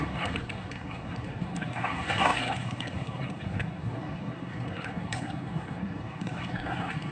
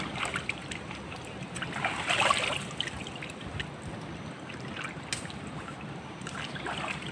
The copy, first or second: first